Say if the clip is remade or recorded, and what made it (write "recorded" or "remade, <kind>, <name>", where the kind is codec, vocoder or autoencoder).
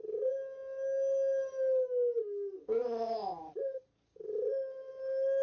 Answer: recorded